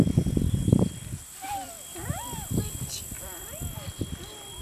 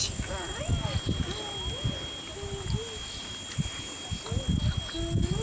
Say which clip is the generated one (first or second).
first